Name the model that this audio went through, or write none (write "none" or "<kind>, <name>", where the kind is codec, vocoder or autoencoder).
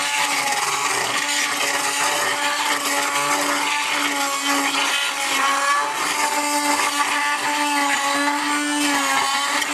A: none